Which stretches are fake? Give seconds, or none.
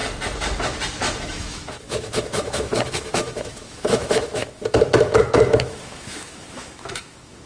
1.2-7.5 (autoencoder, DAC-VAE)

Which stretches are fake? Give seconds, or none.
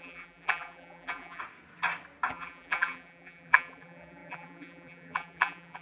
0.0-1.4 (vocoder, BigVGAN v2); 2.3-5.8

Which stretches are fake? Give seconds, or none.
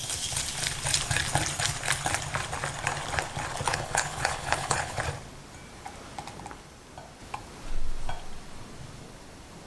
3.7-5.0 (codec, HILCodec)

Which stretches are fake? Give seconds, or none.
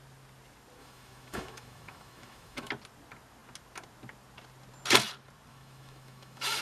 0.8-2.7 (autoencoder, DAC-VAE); 5.5-6.6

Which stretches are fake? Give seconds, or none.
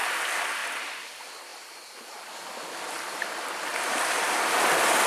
none